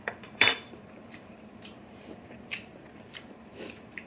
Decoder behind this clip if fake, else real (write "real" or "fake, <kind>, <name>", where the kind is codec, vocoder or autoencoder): fake, vocoder, BigVGAN v2